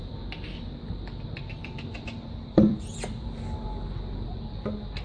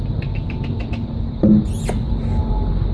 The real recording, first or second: second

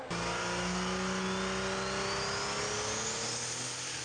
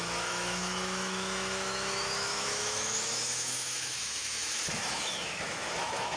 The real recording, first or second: first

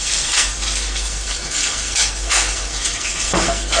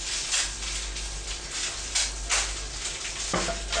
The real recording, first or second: second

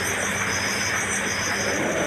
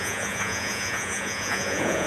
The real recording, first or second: first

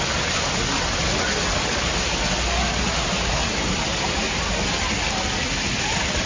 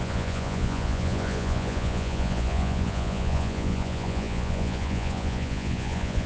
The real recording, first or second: first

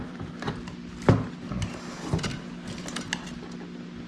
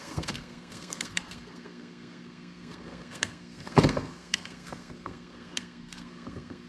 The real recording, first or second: first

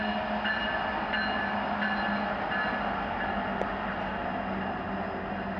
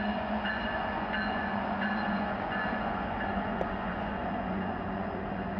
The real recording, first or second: first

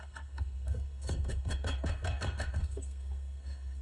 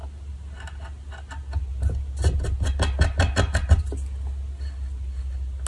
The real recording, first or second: second